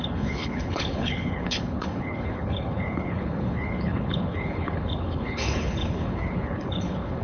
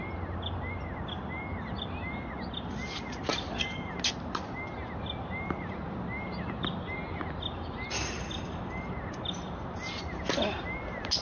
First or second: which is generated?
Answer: first